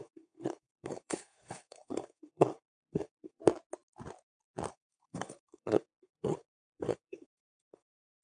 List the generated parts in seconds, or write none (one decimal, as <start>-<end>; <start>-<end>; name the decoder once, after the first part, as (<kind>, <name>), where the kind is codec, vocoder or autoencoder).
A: 0.0-3.4 (codec, SNAC); 4.7-8.2